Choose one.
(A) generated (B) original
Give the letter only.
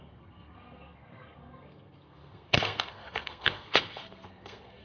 A